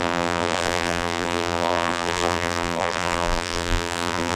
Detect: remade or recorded remade